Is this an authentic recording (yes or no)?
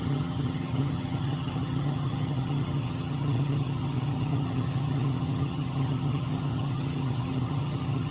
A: no